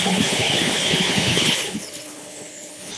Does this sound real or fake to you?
fake